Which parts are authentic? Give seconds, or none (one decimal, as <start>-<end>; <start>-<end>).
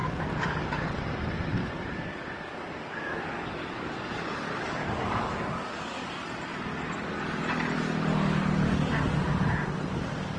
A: 1.0-1.6; 6.1-10.4